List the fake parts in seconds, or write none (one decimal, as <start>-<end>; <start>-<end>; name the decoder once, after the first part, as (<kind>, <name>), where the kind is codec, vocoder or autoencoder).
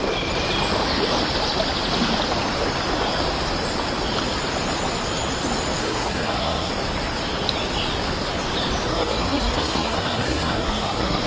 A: 5.8-6.7 (codec, SNAC); 8.9-11.3